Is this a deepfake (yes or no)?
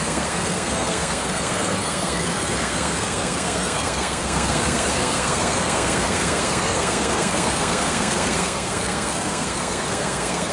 yes